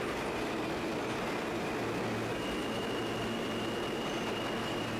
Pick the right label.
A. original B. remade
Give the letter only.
A